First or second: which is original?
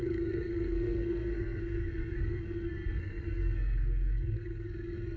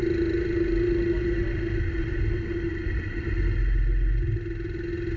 second